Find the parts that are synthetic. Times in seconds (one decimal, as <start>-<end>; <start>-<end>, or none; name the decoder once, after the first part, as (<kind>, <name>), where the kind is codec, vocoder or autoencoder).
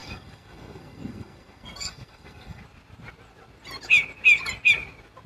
0.0-2.6 (codec, SNAC)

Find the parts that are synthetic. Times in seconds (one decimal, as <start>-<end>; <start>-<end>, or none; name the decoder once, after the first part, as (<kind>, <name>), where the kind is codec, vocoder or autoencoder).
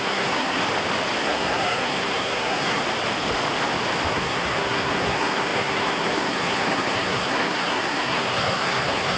0.0-0.6 (codec, SNAC); 1.2-2.8; 4.1-9.2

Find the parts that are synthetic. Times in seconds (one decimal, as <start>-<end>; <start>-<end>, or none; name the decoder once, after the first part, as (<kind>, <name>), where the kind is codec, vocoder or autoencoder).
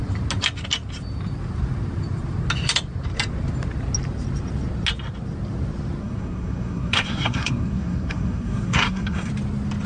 6.0-9.3 (codec, SNAC)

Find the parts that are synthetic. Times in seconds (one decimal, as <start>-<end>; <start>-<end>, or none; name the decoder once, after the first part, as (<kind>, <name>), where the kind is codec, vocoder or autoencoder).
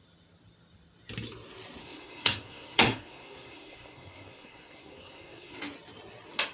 1.8-5.6 (codec, SNAC)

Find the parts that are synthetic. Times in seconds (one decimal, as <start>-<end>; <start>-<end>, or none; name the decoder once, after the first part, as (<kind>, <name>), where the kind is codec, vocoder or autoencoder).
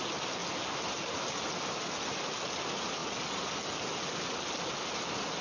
none